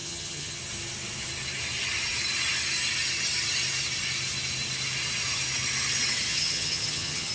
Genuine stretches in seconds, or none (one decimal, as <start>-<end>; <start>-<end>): 0.6-6.3